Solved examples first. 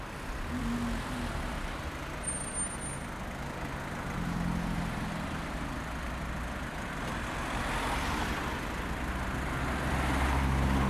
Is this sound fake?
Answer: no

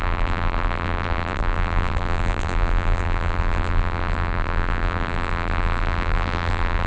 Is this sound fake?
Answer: yes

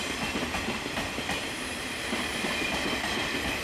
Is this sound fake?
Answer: yes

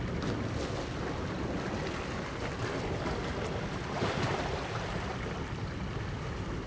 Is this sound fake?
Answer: no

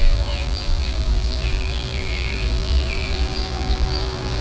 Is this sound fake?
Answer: yes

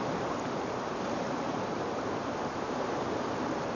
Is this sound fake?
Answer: yes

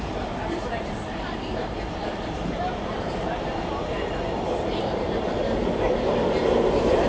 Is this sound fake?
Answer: yes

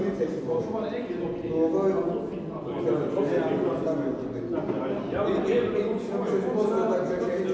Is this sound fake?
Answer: no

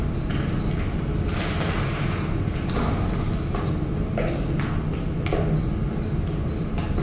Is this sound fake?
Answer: no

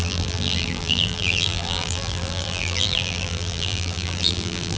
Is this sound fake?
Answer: yes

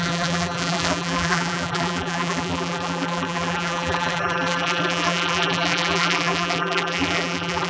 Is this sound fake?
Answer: yes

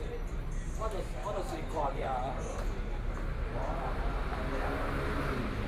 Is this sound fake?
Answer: no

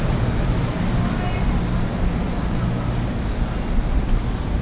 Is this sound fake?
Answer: no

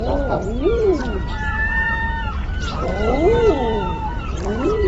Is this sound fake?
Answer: yes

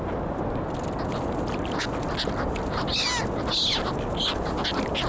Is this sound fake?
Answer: no